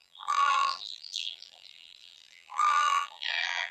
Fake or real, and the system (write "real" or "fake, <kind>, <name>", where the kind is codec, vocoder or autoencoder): fake, vocoder, BigVGAN v2